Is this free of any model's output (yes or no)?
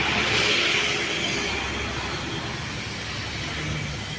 yes